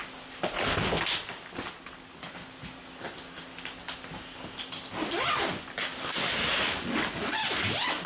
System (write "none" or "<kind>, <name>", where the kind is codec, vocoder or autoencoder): none